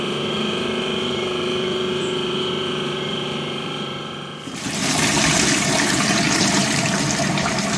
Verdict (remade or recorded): remade